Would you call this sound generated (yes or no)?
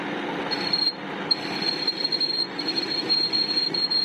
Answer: no